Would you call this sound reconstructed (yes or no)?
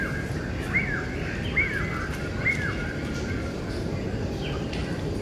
no